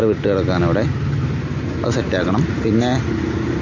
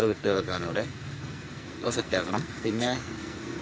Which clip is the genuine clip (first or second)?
first